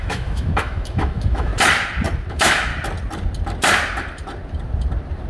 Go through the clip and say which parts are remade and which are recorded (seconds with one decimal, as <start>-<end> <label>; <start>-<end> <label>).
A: 0.0-1.5 remade; 1.5-2.3 recorded; 2.3-2.7 remade; 2.7-5.3 recorded